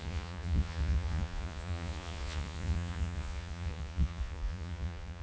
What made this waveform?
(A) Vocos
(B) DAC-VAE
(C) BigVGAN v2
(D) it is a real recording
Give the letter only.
A